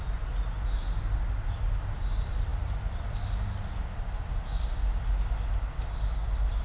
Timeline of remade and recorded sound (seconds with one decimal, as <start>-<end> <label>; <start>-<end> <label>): 0.0-6.6 recorded